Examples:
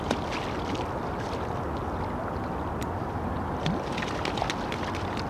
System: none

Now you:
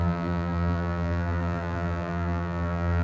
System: vocoder, BigVGAN v2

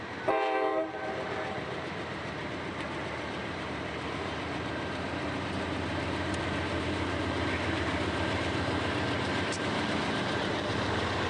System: vocoder, BigVGAN v2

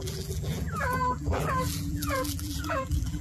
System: vocoder, BigVGAN v2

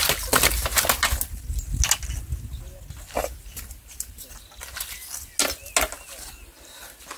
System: none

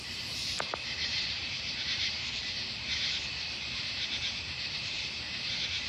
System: vocoder, BigVGAN v2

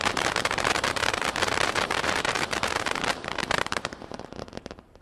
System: vocoder, BigVGAN v2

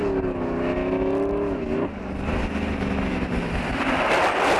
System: none